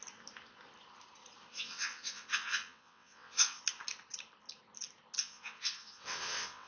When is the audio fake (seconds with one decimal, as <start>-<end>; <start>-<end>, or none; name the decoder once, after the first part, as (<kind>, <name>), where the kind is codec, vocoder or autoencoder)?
1.5-3.6 (vocoder, WaveNeXt); 5.2-6.7

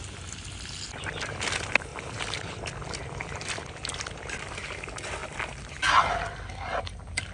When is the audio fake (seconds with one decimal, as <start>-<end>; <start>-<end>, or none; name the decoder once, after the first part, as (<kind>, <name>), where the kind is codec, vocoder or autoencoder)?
1.9-3.5 (vocoder, BigVGAN v2); 5.2-5.8

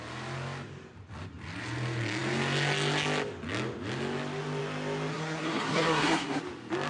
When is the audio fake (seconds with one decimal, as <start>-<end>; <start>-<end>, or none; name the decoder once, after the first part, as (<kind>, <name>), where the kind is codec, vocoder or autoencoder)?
5.1-6.4 (codec, SNAC)

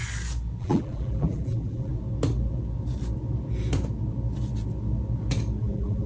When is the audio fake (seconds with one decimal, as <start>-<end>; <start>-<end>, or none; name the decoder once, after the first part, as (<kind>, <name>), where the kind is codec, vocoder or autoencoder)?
0.6-1.9 (vocoder, BigVGAN v2); 5.6-6.1

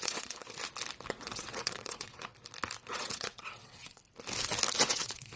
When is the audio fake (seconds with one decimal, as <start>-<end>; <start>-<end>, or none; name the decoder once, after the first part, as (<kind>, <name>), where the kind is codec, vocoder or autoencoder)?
0.0-0.4 (vocoder, WaveNeXt); 1.1-2.3; 2.9-4.0; 4.8-5.4